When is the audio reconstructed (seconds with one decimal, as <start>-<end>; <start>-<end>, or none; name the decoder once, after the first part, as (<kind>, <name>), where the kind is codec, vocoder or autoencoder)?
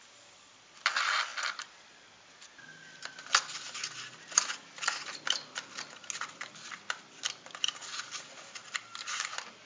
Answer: none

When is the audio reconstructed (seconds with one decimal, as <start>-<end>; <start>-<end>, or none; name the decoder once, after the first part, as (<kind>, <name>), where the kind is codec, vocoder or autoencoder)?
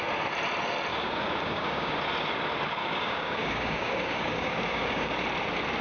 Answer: 0.9-2.0 (codec, DAC); 2.8-5.2